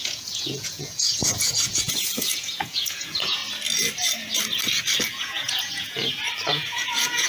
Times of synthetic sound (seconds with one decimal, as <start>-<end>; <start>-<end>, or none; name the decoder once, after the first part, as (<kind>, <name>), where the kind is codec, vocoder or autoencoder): 0.0-3.4 (vocoder, Vocos); 5.1-6.0; 6.5-7.3